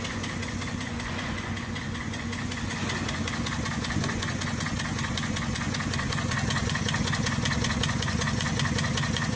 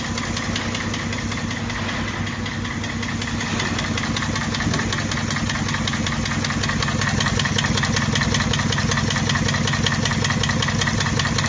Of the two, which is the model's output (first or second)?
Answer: first